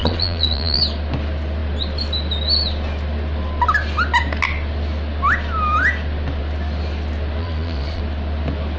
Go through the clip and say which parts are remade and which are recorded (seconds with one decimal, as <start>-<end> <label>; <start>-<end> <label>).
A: 0.0-0.8 remade; 0.8-7.4 recorded; 7.4-8.0 remade; 8.0-8.8 recorded